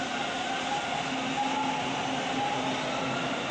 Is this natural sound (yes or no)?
yes